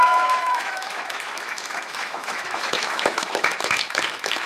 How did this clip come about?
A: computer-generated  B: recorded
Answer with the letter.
A